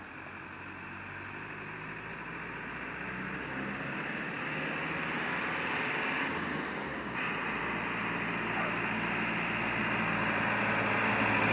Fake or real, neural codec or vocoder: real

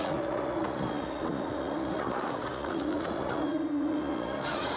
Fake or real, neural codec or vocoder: fake, vocoder, Vocos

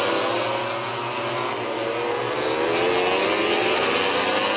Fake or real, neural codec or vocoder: real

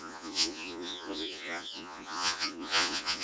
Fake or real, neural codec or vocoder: fake, vocoder, Vocos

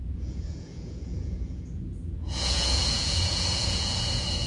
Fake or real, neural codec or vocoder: fake, vocoder, Vocos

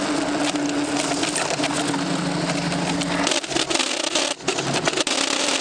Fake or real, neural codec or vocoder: real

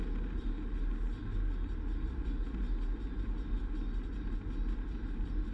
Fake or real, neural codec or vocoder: real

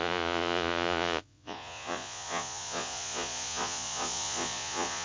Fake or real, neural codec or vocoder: fake, vocoder, Vocos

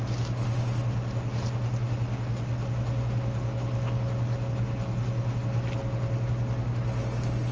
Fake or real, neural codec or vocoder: real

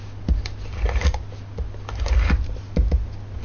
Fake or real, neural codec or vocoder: real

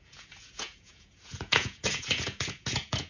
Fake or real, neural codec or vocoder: fake, vocoder, Vocos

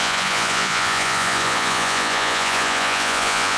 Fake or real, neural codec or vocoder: fake, vocoder, Vocos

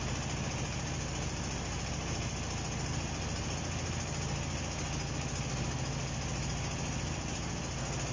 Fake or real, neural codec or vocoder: real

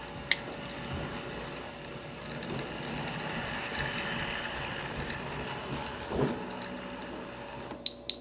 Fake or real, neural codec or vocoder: real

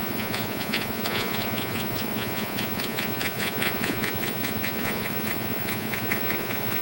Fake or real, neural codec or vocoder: fake, vocoder, Vocos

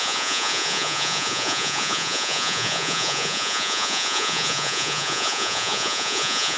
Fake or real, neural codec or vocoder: fake, vocoder, Vocos